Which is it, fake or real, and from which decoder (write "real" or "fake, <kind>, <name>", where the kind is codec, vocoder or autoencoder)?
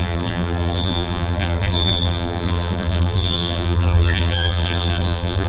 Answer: fake, vocoder, BigVGAN v2